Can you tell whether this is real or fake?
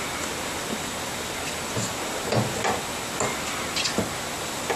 real